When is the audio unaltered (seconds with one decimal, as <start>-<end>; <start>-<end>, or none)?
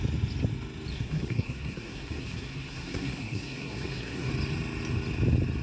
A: 0.0-0.9; 4.3-5.6